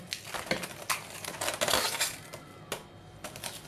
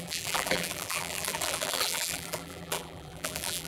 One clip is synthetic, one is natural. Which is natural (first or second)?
first